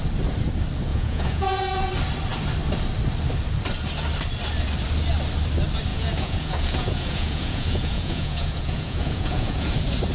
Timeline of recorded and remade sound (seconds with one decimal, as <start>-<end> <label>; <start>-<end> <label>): 0.0-0.9 recorded; 0.9-1.9 remade; 1.9-5.9 recorded; 5.9-9.7 remade; 9.7-10.1 recorded